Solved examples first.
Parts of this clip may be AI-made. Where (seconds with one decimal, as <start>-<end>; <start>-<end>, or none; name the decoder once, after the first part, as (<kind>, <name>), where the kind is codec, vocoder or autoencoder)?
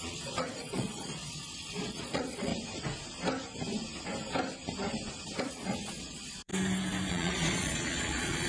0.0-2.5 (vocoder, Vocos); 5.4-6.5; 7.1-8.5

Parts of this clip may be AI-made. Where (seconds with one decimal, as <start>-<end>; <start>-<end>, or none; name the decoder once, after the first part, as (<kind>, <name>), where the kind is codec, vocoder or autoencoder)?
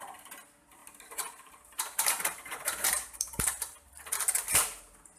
0.8-3.9 (vocoder, BigVGAN v2)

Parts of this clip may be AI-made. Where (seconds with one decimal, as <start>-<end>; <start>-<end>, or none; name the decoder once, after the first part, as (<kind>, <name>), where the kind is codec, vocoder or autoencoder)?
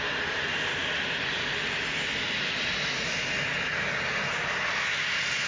none